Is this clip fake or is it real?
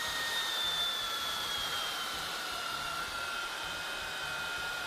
fake